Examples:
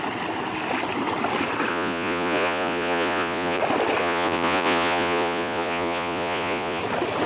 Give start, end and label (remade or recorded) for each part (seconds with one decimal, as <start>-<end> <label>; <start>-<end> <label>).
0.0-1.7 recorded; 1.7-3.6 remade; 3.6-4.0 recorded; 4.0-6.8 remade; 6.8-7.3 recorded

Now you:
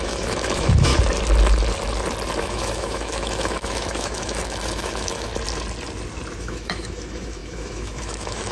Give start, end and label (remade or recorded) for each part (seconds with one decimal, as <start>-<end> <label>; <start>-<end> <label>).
0.0-0.9 remade; 0.9-2.4 recorded; 2.4-5.3 remade; 5.3-6.4 recorded; 6.4-8.5 remade

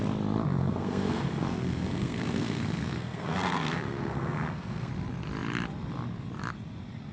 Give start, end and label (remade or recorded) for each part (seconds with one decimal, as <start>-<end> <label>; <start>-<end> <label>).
0.0-0.6 recorded; 0.6-4.9 remade; 4.9-7.1 recorded

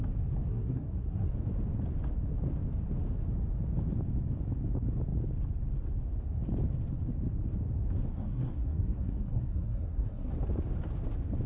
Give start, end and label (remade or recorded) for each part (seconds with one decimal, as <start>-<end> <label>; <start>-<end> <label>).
0.0-0.5 recorded; 0.5-1.3 remade; 1.3-8.1 recorded; 8.1-10.3 remade; 10.3-11.5 recorded

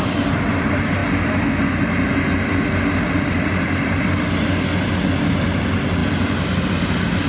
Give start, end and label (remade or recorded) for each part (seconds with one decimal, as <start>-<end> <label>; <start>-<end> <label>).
0.0-7.3 recorded

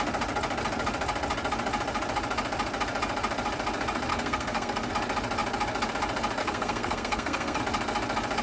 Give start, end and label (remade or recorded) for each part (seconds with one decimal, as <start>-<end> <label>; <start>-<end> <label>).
0.0-4.1 recorded; 4.1-4.9 remade; 4.9-6.4 recorded; 6.4-7.6 remade; 7.6-8.4 recorded

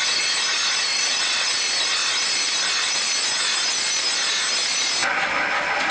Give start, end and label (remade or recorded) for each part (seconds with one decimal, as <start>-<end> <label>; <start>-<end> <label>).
0.0-0.9 recorded; 0.9-1.6 remade; 1.6-5.9 recorded

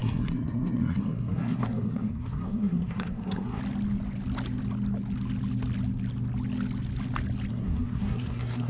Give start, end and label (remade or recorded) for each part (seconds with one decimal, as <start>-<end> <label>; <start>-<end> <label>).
0.0-3.6 remade; 3.6-7.5 recorded; 7.5-8.7 remade